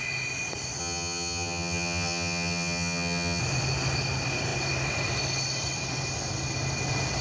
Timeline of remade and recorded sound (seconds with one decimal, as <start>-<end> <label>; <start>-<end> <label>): 0.0-0.8 recorded; 0.8-3.4 remade; 3.4-7.2 recorded